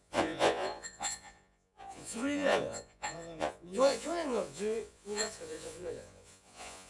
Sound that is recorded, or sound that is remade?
remade